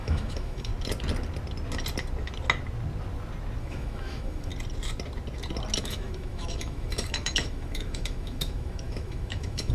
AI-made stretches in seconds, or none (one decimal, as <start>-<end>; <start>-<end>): 0.0-0.7; 3.6-4.5; 5.8-9.7